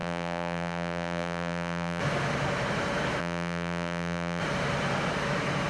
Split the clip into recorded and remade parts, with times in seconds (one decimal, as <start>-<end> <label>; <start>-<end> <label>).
0.0-2.0 remade; 2.0-3.2 recorded; 3.2-4.4 remade; 4.4-5.7 recorded